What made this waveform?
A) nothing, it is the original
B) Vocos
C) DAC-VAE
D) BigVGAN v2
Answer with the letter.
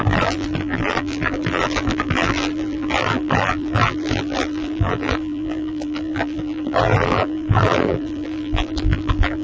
D